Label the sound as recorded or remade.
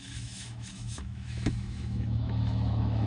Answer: remade